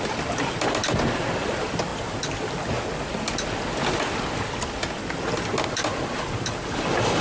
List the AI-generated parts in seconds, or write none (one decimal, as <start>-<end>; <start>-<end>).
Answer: none